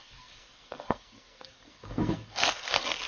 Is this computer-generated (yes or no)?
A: yes